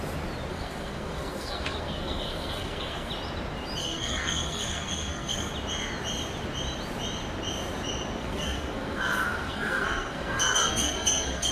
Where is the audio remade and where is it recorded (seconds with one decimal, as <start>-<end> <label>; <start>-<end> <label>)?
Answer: 0.0-0.5 recorded; 0.5-3.1 remade; 3.1-3.8 recorded; 3.8-5.5 remade; 5.5-8.2 recorded; 8.2-11.5 remade